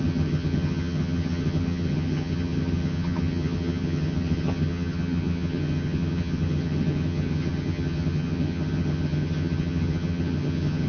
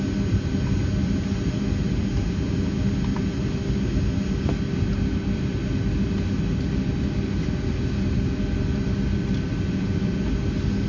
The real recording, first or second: second